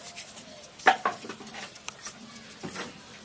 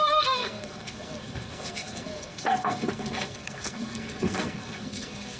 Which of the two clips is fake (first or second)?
second